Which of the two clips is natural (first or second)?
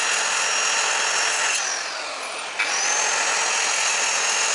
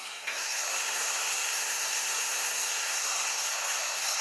first